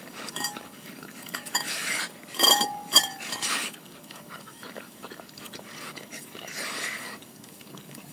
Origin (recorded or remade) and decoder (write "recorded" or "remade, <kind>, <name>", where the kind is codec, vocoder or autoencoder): remade, codec, DAC